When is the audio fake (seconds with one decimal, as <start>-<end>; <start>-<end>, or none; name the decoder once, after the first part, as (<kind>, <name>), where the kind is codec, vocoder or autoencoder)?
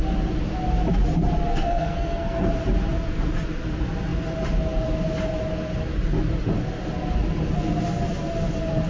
1.5-2.5 (codec, SNAC)